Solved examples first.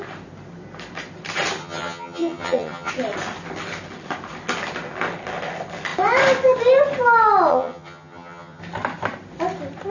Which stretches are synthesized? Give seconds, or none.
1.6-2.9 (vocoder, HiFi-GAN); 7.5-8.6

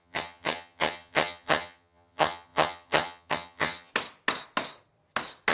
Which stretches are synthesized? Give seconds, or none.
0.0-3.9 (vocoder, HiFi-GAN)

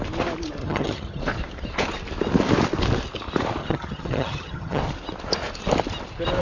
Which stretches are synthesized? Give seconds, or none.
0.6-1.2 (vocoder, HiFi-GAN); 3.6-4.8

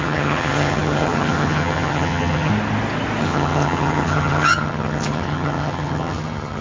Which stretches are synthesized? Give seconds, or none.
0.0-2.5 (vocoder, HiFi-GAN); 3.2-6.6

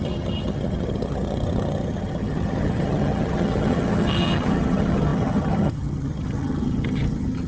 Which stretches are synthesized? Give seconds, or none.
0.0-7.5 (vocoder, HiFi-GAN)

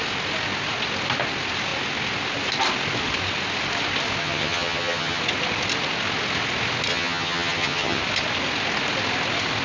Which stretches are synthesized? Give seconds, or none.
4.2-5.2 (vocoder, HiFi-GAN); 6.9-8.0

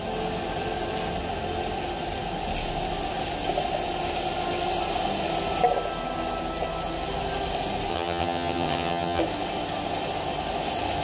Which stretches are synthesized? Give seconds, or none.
7.9-9.2 (vocoder, HiFi-GAN)

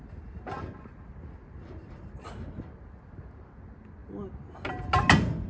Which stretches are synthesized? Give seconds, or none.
none